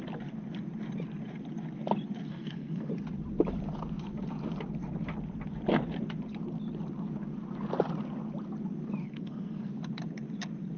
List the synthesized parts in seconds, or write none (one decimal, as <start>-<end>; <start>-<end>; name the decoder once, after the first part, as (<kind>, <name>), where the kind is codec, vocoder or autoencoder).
2.3-2.9 (codec, SNAC); 9.0-9.7